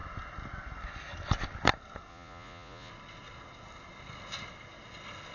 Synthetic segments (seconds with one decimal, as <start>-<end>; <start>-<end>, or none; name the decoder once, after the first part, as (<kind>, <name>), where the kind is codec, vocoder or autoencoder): 2.1-2.9 (vocoder, Vocos)